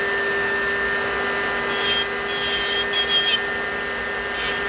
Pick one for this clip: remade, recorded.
recorded